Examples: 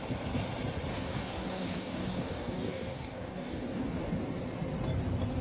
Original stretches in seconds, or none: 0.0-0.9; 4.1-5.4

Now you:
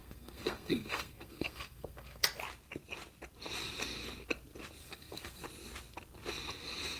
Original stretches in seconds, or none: 2.2-4.8; 5.4-7.0

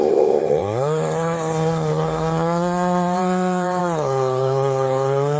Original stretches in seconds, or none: none

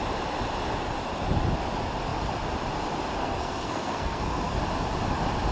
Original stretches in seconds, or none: 0.0-3.2; 4.6-5.5